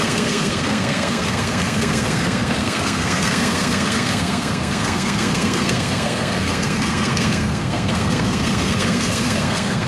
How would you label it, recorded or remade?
remade